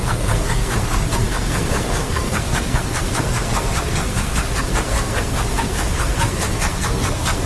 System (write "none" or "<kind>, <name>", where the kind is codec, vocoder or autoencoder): codec, SNAC